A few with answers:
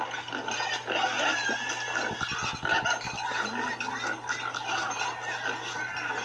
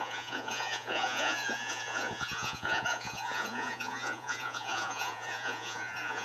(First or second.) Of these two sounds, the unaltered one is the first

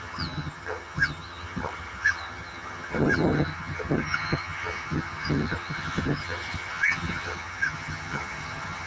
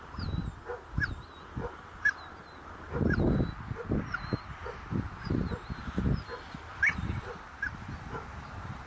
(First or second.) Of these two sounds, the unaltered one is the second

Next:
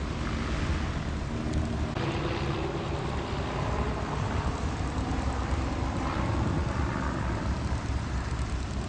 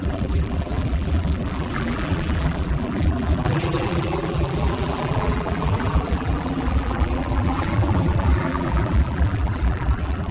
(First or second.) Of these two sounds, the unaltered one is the first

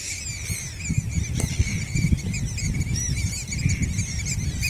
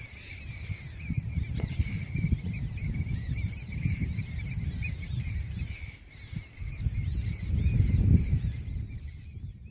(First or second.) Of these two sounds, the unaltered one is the first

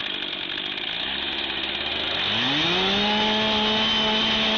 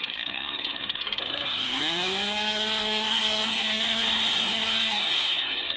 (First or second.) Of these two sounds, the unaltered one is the first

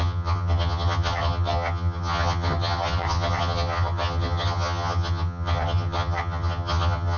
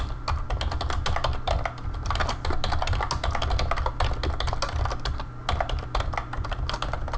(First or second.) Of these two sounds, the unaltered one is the second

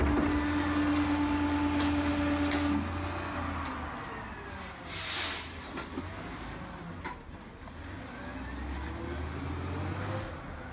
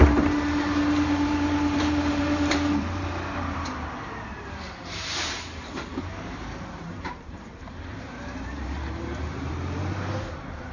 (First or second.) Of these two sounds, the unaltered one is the first